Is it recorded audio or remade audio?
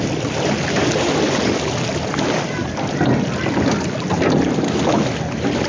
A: recorded